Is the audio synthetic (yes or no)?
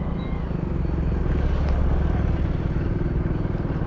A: no